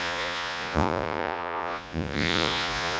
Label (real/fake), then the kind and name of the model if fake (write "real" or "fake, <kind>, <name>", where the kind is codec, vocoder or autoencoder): fake, vocoder, Vocos